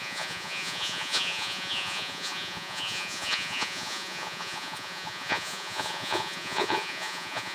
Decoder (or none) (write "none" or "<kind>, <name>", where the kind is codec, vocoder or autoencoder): vocoder, Vocos